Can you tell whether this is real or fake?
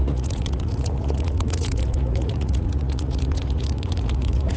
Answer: fake